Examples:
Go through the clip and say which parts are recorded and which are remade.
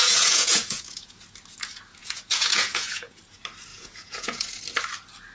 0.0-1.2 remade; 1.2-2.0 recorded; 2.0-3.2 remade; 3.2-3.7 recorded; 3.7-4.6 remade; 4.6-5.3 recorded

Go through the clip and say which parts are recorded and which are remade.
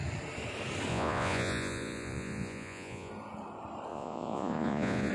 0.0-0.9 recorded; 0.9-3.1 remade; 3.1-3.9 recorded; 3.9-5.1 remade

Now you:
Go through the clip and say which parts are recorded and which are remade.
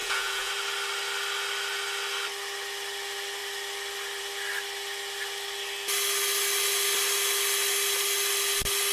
0.0-0.5 remade; 0.5-8.9 recorded